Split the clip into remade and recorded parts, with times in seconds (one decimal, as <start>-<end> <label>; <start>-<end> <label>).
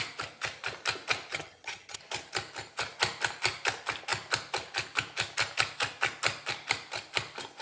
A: 0.0-1.3 recorded; 1.3-2.0 remade; 2.0-7.6 recorded